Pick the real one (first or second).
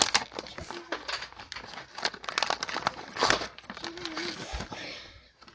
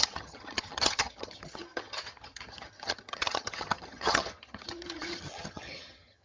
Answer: first